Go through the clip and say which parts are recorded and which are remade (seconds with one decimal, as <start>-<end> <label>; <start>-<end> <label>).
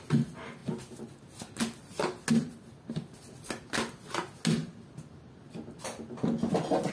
0.0-6.9 recorded